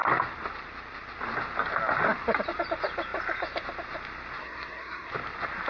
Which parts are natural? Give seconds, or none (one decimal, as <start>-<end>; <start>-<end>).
0.0-4.4; 5.1-5.7